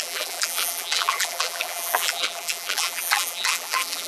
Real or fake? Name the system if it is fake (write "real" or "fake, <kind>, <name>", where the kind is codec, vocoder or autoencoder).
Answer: fake, vocoder, BigVGAN v2